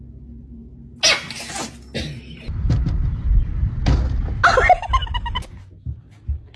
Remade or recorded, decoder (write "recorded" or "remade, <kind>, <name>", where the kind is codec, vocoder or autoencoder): recorded